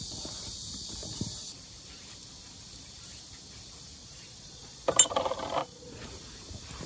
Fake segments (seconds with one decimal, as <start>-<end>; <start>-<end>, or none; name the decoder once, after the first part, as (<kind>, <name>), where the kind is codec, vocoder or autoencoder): 4.0-4.8 (vocoder, Vocos); 5.6-6.1